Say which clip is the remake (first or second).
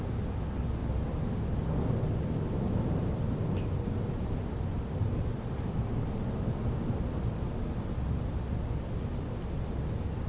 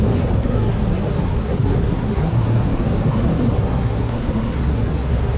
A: second